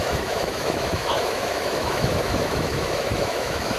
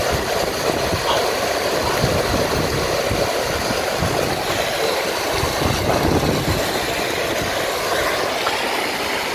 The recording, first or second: second